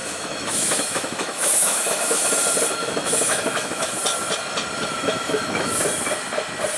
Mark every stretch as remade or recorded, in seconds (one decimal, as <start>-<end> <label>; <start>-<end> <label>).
0.0-2.3 remade; 2.3-2.8 recorded; 2.8-4.0 remade; 4.0-5.0 recorded; 5.0-5.7 remade; 5.7-6.8 recorded